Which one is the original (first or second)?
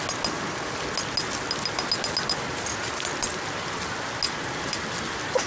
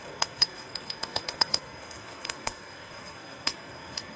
first